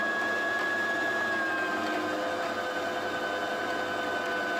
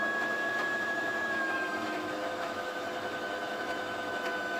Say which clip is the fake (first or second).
second